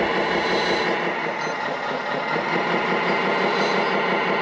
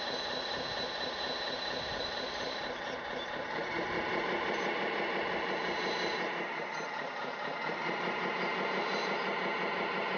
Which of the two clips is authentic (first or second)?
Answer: first